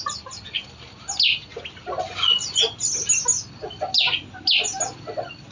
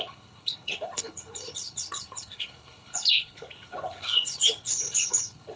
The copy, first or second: second